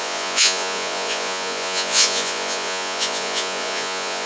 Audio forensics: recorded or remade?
remade